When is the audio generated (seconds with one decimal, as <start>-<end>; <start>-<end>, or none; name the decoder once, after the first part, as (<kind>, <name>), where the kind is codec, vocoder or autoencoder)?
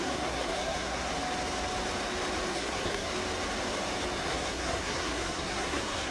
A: 0.0-1.1 (codec, SNAC); 2.5-3.1; 4.2-6.1